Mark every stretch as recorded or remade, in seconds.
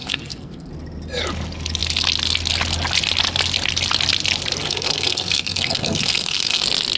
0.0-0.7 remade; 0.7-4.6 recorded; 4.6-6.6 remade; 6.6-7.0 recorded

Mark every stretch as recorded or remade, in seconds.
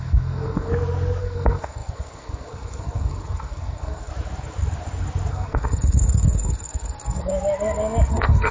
0.0-0.7 remade; 0.7-1.2 recorded; 1.2-4.1 remade; 4.1-5.3 recorded; 5.3-7.3 remade; 7.3-8.1 recorded; 8.1-8.5 remade